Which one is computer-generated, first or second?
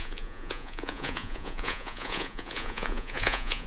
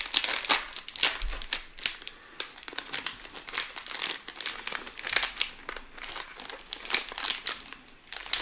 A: first